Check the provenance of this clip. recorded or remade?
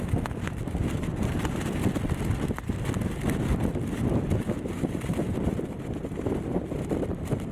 recorded